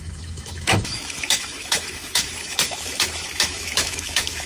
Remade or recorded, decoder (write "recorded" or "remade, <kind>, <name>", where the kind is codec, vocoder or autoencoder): remade, autoencoder, DAC-VAE